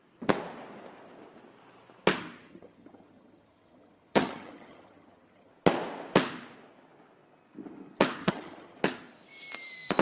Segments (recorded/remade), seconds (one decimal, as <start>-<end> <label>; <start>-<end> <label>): 0.0-2.5 recorded; 2.5-5.5 remade; 5.5-8.2 recorded; 8.2-8.8 remade; 8.8-10.0 recorded